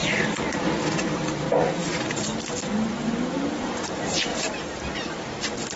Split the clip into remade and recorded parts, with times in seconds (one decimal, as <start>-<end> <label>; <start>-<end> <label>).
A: 0.0-1.7 recorded; 1.7-2.3 remade; 2.3-3.6 recorded; 3.6-5.8 remade